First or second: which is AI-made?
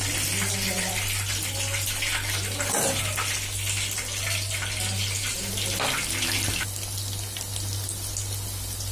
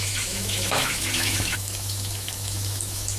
second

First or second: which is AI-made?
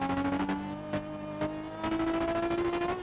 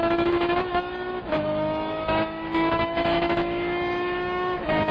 second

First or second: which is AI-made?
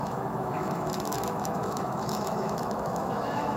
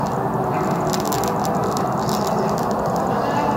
first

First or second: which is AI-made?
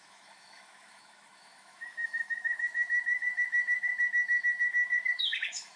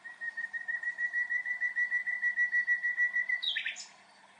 first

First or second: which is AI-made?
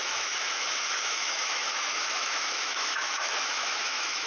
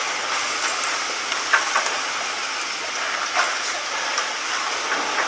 first